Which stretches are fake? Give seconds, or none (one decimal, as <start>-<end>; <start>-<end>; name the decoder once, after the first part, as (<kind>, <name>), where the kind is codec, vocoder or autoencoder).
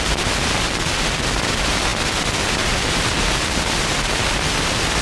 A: 0.0-5.0 (vocoder, BigVGAN v2)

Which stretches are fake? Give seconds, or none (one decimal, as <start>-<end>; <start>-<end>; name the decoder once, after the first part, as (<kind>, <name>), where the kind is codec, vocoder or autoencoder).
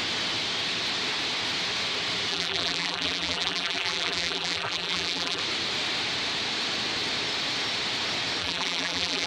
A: 2.3-5.4 (vocoder, BigVGAN v2); 8.4-9.3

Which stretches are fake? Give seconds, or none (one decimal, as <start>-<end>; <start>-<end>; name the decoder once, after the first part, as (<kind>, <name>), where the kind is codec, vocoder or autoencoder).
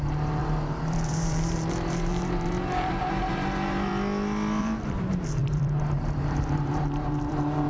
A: 0.0-3.9 (vocoder, BigVGAN v2); 4.6-7.7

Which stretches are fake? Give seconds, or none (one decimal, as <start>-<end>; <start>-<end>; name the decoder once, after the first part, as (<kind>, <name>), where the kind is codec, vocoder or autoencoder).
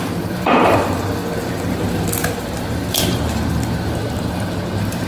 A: 0.0-1.2 (vocoder, BigVGAN v2); 4.3-5.1